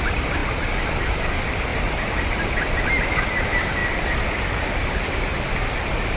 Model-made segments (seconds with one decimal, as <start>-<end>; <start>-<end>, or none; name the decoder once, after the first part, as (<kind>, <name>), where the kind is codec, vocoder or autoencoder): none